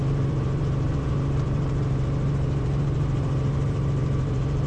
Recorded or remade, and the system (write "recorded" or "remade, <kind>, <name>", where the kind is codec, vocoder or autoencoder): remade, vocoder, BigVGAN v2